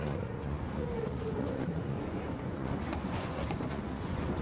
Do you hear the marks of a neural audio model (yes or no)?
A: yes